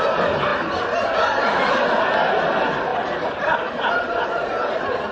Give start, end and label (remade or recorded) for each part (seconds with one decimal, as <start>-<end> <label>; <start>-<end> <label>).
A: 0.0-2.9 recorded; 2.9-5.1 remade